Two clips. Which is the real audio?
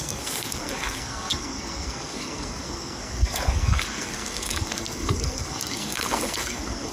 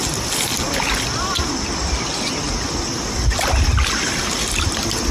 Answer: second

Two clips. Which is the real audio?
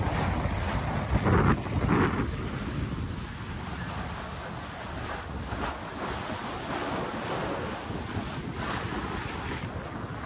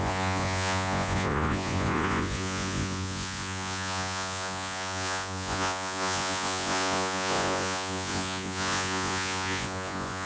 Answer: first